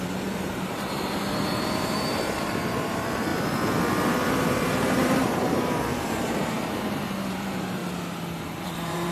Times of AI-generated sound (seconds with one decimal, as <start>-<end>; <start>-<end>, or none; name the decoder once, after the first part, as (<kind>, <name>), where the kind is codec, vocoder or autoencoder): 0.0-3.3 (vocoder, BigVGAN v2); 4.0-7.8; 8.4-9.1